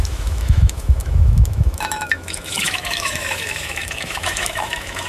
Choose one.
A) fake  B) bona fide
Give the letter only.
A